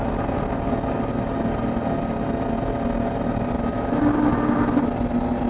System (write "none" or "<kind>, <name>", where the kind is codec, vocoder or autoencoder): none